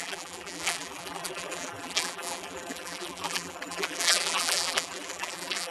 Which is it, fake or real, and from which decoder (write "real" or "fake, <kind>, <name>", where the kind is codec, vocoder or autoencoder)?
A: fake, vocoder, BigVGAN v2